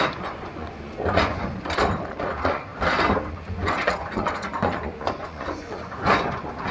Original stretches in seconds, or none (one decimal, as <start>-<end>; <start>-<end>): 1.5-2.1; 2.7-3.3